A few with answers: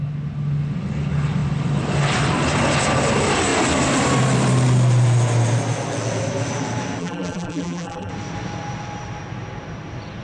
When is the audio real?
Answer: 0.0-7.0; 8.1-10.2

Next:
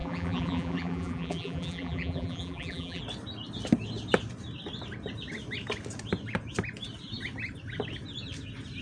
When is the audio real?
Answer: 3.0-8.8